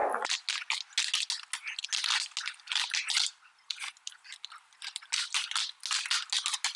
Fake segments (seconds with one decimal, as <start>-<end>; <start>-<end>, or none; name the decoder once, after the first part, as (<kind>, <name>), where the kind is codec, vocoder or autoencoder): none